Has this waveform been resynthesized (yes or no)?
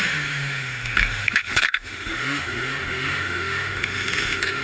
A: yes